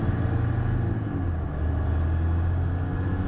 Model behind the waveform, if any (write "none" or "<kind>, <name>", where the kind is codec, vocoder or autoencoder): none